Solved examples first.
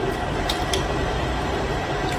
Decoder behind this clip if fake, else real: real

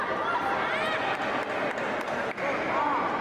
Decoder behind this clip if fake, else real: real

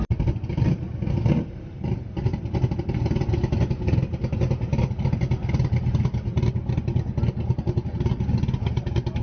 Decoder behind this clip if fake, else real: real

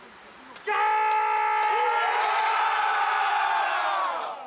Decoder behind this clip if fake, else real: real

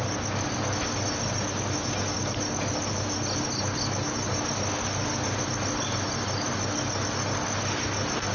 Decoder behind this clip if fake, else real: real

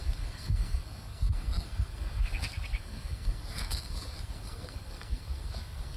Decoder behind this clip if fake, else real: fake, codec, SNAC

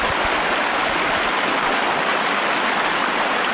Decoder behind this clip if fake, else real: real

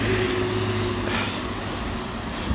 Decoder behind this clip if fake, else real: real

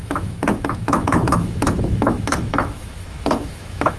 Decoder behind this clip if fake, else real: fake, autoencoder, DAC-VAE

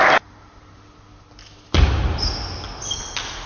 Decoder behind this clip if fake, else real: real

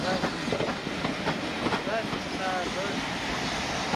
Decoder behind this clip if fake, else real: real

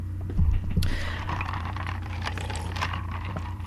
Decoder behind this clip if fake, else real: fake, vocoder, BigVGAN v2